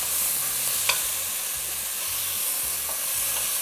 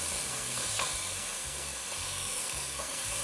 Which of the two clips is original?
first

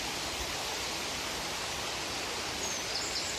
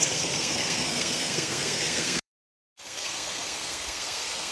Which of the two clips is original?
first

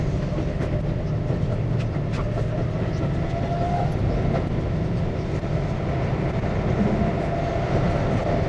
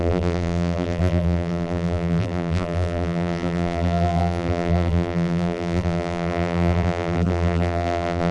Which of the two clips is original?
first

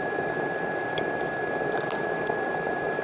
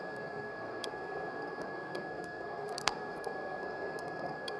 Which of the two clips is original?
first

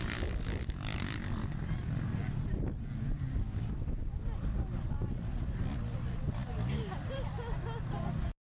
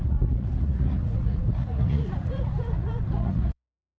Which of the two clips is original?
first